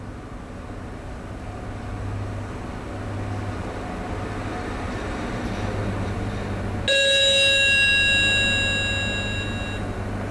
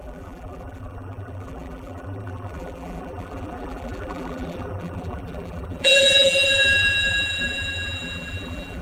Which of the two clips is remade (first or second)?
second